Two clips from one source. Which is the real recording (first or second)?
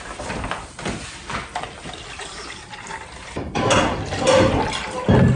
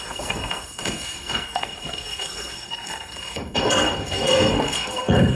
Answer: first